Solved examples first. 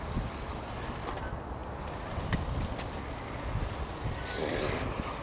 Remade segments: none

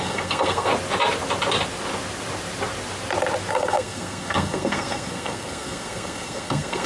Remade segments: 0.0-0.7 (codec, SNAC); 3.5-6.9

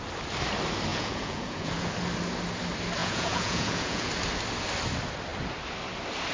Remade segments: 0.9-1.9 (vocoder, Vocos); 3.0-4.1

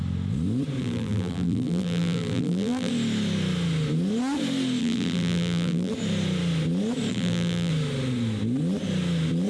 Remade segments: 0.8-2.9 (vocoder, BigVGAN v2); 4.8-5.9; 7.1-7.7